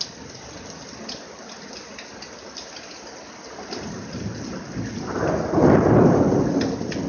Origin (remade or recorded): recorded